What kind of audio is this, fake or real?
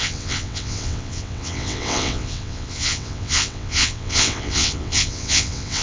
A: fake